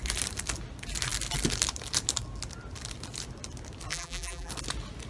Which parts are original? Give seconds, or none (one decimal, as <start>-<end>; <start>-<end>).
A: 0.0-3.9; 4.5-5.1